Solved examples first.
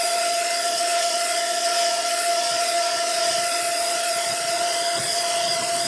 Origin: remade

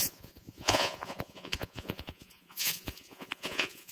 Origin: remade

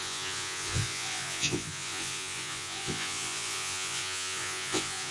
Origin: remade